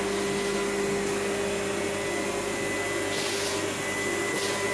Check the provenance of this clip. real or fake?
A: real